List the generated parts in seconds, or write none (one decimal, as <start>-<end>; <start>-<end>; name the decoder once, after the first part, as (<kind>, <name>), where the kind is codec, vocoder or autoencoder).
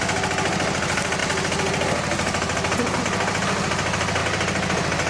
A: none